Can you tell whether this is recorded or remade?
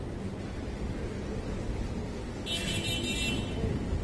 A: recorded